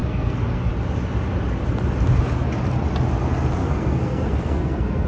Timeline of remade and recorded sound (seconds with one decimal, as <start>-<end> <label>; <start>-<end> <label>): 0.0-0.7 remade; 0.7-3.6 recorded; 3.6-5.1 remade